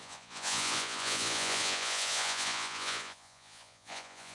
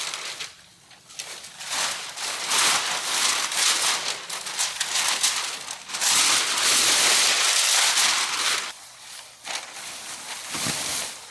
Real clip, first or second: second